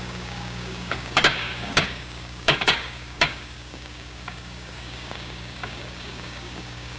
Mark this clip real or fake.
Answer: fake